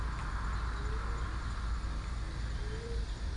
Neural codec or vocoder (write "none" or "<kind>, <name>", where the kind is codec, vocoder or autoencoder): none